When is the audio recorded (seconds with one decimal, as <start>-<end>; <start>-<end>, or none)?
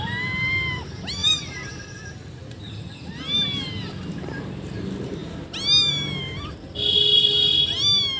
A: 0.0-1.2; 1.7-8.2